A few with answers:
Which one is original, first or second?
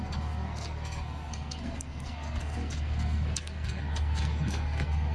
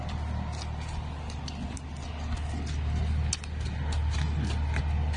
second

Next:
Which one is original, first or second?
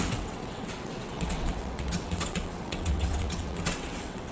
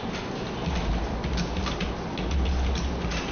second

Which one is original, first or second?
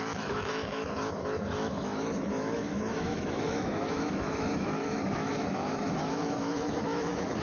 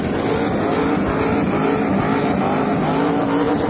second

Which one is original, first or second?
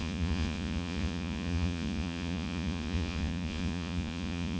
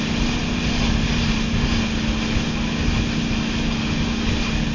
second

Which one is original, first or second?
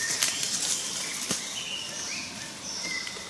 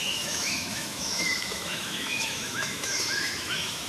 first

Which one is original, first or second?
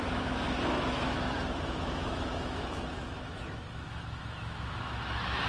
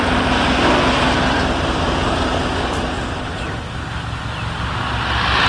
second